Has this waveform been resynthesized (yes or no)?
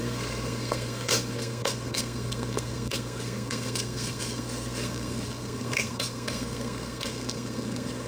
yes